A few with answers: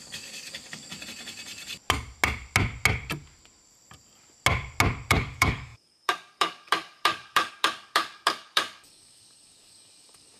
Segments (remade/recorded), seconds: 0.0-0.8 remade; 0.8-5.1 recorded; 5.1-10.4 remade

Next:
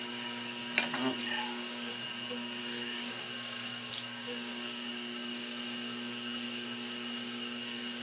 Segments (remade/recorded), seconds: 0.0-0.6 remade; 0.6-1.2 recorded; 1.2-2.0 remade; 2.0-2.6 recorded; 2.6-8.0 remade

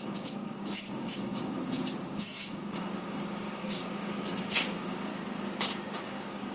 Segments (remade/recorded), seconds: 0.0-5.1 remade; 5.1-5.9 recorded; 5.9-6.5 remade

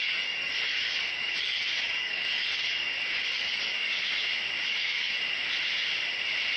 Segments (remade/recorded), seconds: 0.0-4.0 remade; 4.0-4.7 recorded; 4.7-5.2 remade; 5.2-6.6 recorded

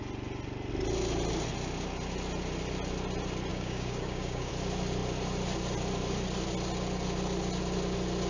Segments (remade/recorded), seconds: 0.0-3.5 recorded; 3.5-4.5 remade; 4.5-8.3 recorded

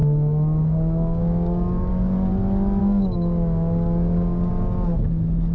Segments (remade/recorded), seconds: 0.0-2.3 remade; 2.3-2.8 recorded; 2.8-4.5 remade; 4.5-5.5 recorded

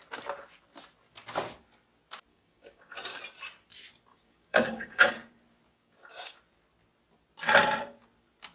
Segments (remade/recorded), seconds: 0.0-2.3 recorded; 2.3-3.2 remade; 3.2-4.1 recorded; 4.1-5.1 remade; 5.1-5.7 recorded; 5.7-6.4 remade; 6.4-8.5 recorded

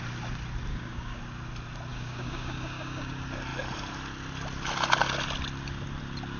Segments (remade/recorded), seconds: 0.0-0.7 recorded; 0.7-1.2 remade; 1.2-1.9 recorded; 1.9-3.1 remade; 3.1-6.4 recorded